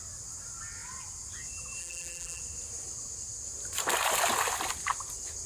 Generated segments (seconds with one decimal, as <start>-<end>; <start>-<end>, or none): 1.8-2.4